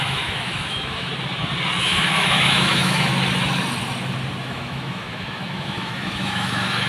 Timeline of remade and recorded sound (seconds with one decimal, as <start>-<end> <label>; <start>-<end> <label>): 0.0-1.1 remade; 1.1-1.8 recorded; 1.8-3.1 remade; 3.1-4.4 recorded; 4.4-6.9 remade